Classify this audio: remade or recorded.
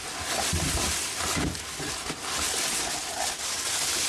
recorded